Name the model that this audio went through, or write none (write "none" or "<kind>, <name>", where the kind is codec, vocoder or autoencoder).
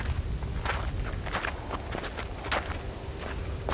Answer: none